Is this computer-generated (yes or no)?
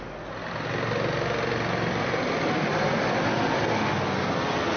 no